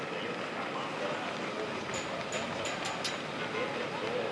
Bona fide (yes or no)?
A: yes